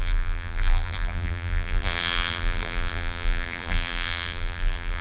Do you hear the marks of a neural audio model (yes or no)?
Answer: yes